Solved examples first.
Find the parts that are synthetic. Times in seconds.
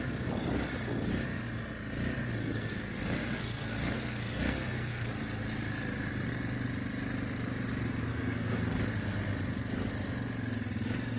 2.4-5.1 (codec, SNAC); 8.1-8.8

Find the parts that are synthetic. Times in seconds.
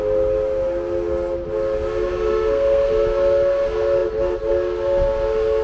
2.3-2.9 (codec, SNAC)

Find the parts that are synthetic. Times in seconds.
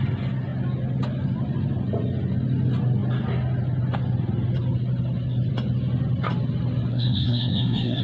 6.9-8.0 (codec, SNAC)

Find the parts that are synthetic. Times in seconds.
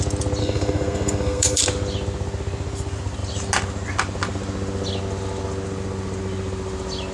0.4-1.6 (codec, SNAC)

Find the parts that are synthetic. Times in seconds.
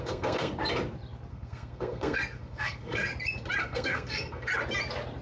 0.0-0.5 (codec, SNAC); 1.3-3.1; 3.6-4.5